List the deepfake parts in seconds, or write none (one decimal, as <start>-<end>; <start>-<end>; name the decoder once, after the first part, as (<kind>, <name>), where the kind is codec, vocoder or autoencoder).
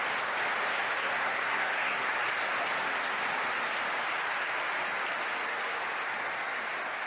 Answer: 0.7-2.1 (codec, SNAC)